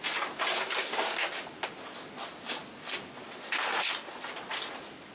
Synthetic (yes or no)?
no